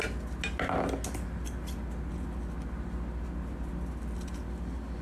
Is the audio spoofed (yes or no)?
no